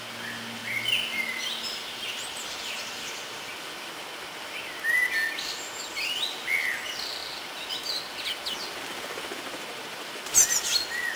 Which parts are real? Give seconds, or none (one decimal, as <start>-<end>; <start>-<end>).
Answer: 0.0-11.2